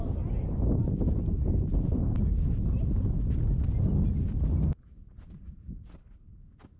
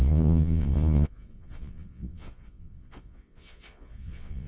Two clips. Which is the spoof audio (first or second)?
second